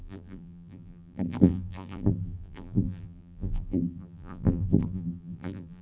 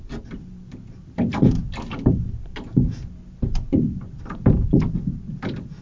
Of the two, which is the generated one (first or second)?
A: first